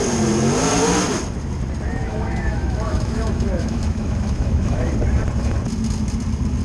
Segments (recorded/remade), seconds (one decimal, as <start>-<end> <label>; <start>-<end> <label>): 0.0-2.0 recorded; 2.0-4.9 remade; 4.9-6.6 recorded